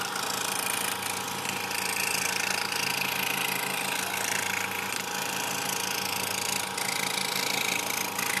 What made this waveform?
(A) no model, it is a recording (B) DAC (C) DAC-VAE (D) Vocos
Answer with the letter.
A